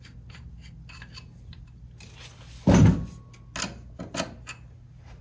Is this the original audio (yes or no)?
yes